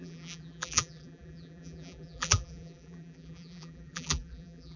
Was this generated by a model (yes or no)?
yes